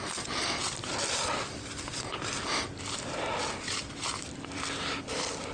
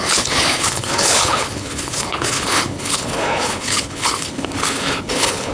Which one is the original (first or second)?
first